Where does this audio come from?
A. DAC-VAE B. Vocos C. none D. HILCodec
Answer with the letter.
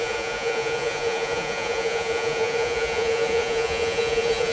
B